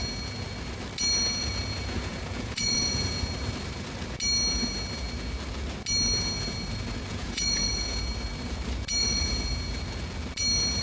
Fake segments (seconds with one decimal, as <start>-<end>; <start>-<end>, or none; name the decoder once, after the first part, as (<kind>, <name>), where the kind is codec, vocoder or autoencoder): 1.4-3.2 (vocoder, Vocos); 7.1-8.0; 9.0-9.8